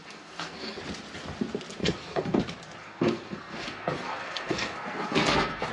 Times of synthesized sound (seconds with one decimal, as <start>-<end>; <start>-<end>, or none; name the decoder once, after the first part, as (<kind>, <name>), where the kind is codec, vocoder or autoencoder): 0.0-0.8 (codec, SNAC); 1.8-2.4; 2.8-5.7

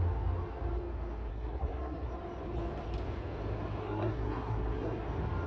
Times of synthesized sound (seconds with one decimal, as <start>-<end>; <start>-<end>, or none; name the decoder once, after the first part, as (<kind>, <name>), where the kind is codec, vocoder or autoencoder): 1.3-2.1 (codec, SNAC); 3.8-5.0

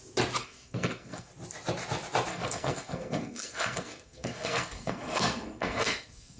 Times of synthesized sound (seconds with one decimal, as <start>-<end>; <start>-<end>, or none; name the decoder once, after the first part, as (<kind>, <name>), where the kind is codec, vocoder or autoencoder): 0.4-1.3 (codec, SNAC); 2.3-6.4